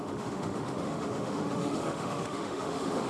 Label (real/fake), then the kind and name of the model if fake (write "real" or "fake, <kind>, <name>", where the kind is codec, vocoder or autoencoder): fake, autoencoder, DAC-VAE